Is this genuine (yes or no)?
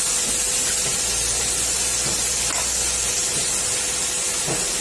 yes